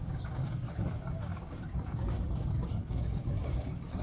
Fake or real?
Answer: fake